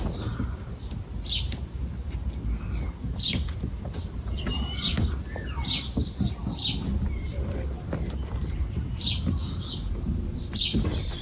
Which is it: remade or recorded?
recorded